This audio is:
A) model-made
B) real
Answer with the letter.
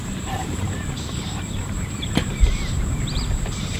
A